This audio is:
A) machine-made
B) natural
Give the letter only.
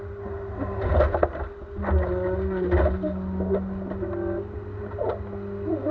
B